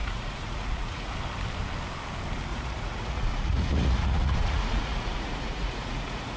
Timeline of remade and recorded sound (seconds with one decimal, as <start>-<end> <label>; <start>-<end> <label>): 0.0-1.1 remade; 1.1-2.5 recorded; 2.5-6.4 remade